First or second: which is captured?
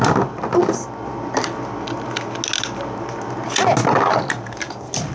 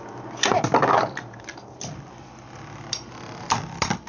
first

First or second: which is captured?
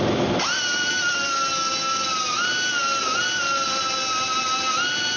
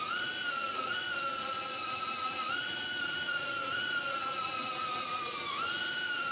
first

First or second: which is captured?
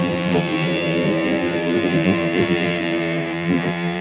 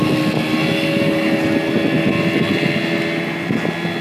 second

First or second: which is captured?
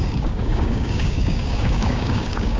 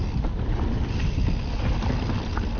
second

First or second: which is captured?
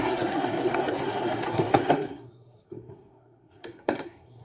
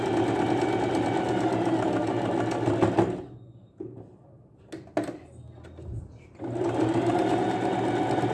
second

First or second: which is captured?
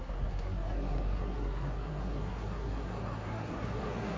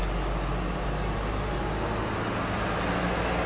second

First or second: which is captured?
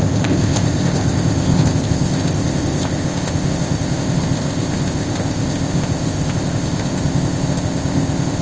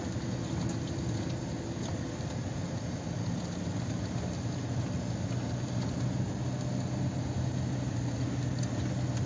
second